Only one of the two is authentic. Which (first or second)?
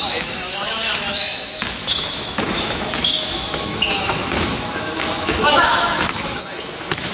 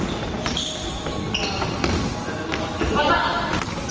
second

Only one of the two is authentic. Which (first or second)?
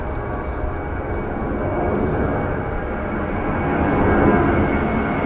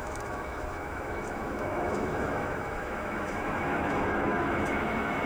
first